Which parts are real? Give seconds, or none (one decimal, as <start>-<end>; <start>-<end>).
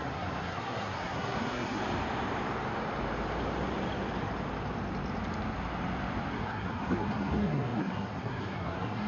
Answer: 1.8-6.3